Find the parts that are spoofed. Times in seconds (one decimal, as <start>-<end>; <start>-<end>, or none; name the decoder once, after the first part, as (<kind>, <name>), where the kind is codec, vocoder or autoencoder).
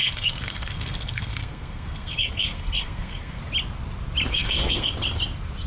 0.0-3.4 (codec, SNAC); 4.3-4.9